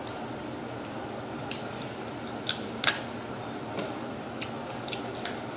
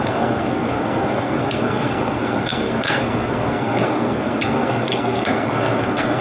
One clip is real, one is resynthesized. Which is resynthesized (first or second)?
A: second